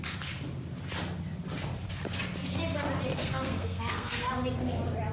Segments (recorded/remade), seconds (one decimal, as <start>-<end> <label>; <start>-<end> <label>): 0.0-3.1 recorded; 3.1-4.3 remade; 4.3-5.1 recorded